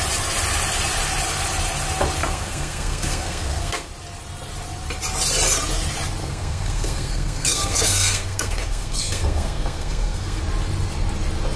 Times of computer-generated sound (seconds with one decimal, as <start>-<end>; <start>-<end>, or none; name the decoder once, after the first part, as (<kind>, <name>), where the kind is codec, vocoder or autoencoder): 2.2-3.9 (codec, SNAC); 6.2-10.4